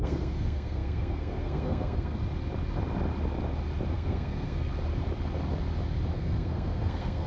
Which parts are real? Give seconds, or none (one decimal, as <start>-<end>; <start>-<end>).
2.2-3.9; 4.7-6.1